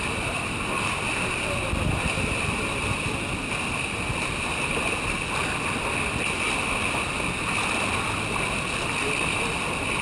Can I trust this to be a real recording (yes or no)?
yes